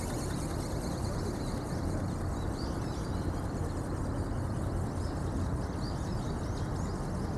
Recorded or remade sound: recorded